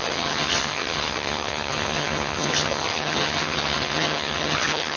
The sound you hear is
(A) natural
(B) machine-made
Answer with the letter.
B